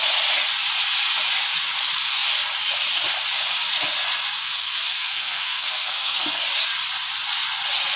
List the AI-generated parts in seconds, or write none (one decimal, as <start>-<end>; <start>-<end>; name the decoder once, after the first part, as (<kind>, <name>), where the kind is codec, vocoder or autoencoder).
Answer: 4.4-6.4 (codec, SNAC)